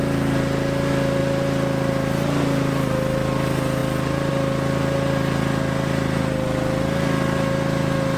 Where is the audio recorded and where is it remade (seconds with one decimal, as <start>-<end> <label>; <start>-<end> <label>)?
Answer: 0.0-8.2 recorded